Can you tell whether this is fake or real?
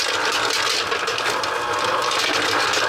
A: real